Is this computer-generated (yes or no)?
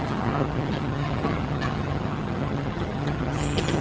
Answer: yes